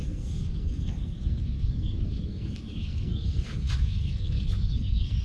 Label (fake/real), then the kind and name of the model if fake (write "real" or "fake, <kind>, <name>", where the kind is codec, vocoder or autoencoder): fake, codec, SNAC